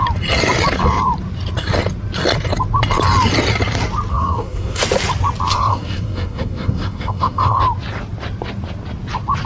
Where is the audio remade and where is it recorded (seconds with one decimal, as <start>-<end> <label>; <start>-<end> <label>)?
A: 0.0-4.1 recorded; 4.1-4.8 remade; 4.8-5.5 recorded; 5.5-7.6 remade; 7.6-9.5 recorded